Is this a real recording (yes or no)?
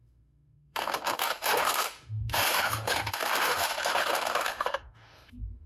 no